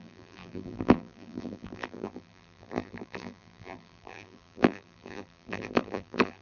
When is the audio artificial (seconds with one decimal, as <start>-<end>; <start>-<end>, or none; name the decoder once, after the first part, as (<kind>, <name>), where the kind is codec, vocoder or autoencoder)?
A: 0.0-6.4 (vocoder, BigVGAN v2)